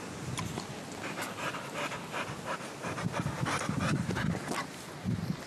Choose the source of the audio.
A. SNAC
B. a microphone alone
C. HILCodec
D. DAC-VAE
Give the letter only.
B